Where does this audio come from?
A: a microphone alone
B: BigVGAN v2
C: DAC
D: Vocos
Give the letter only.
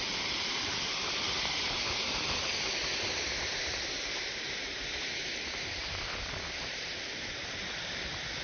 B